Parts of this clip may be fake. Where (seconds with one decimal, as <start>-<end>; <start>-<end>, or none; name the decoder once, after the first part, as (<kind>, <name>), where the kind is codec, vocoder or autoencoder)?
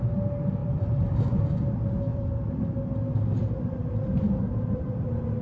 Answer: 0.6-1.4 (vocoder, BigVGAN v2); 2.1-2.6